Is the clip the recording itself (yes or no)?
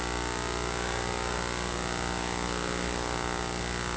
yes